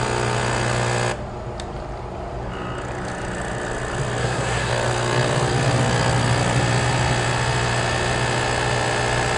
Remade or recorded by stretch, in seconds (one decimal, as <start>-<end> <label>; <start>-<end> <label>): 0.0-4.2 recorded; 4.2-4.7 remade; 4.7-9.4 recorded